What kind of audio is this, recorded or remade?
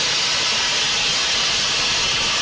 recorded